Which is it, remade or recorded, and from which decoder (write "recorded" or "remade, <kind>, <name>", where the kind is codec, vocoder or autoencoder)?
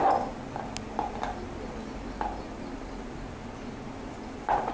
recorded